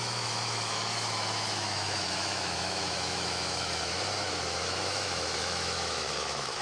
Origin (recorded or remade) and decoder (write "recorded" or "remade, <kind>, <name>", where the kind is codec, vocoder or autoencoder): remade, autoencoder, DAC-VAE